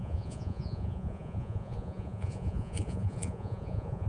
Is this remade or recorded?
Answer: remade